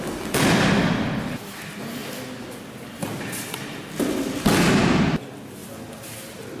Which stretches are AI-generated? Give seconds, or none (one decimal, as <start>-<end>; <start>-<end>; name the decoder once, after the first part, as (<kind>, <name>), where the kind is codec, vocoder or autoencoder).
none